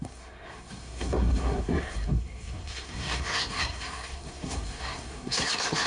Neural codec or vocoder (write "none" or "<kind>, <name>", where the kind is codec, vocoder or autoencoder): codec, SNAC